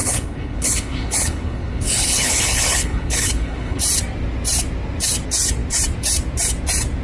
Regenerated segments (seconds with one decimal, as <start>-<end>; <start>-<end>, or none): 0.0-3.8